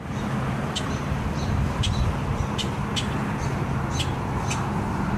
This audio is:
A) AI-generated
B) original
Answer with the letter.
B